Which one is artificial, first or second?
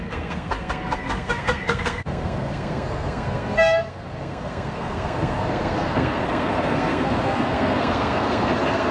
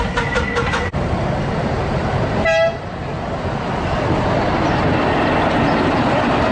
first